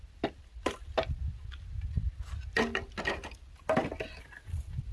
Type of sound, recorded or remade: recorded